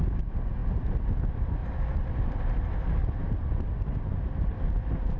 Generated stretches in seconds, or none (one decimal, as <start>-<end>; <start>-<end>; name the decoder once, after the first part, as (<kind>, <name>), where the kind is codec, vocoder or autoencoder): 0.6-1.2 (vocoder, BigVGAN v2); 1.6-4.2